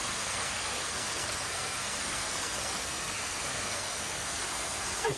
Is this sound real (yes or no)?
no